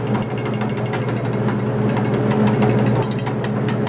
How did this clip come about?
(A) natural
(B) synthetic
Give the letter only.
A